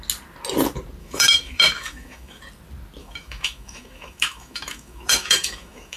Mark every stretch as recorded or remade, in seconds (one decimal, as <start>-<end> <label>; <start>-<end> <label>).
0.0-1.0 recorded; 1.0-2.4 remade; 2.4-3.0 recorded; 3.0-6.0 remade